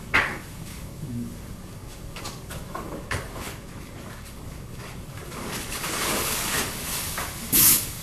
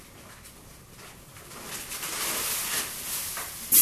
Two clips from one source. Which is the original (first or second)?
second